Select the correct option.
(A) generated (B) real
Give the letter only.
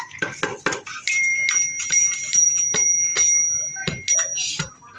A